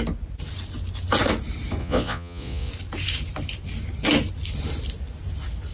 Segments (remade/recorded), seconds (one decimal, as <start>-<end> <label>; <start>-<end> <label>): 0.0-1.8 recorded; 1.8-2.7 remade; 2.7-5.7 recorded